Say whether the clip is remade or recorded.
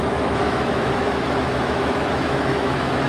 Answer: remade